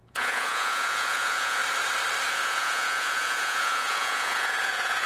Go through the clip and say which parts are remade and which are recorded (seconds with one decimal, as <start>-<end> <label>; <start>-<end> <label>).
0.0-1.6 remade; 1.6-2.3 recorded; 2.3-5.1 remade